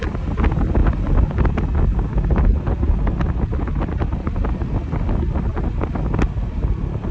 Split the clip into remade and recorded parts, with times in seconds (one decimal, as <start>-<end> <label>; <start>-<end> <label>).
0.0-7.1 recorded